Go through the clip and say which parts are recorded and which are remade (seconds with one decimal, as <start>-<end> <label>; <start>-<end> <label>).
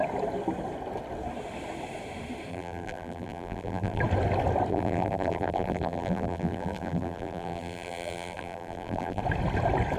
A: 0.0-2.5 recorded; 2.5-4.0 remade; 4.0-4.7 recorded; 4.7-9.2 remade; 9.2-10.0 recorded